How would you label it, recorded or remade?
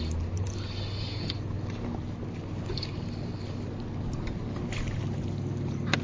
recorded